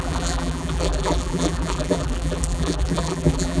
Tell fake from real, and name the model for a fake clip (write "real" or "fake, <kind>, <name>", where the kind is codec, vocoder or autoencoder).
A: fake, vocoder, BigVGAN v2